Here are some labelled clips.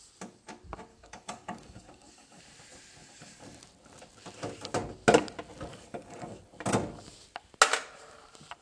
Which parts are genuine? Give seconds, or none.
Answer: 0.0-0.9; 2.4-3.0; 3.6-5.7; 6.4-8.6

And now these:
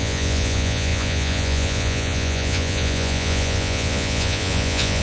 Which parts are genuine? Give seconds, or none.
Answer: none

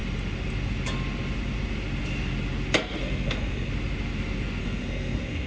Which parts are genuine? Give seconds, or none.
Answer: 0.0-3.0; 3.7-4.6

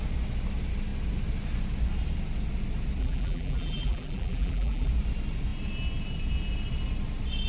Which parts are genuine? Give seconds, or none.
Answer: 0.0-3.0; 4.9-7.5